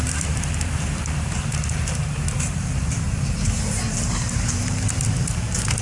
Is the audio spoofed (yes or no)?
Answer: yes